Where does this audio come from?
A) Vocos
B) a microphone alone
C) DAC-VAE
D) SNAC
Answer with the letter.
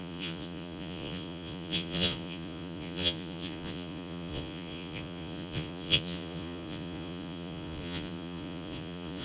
A